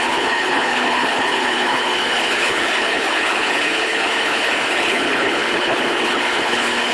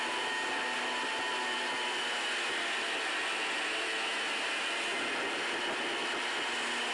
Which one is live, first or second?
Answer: second